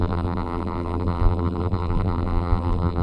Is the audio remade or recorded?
remade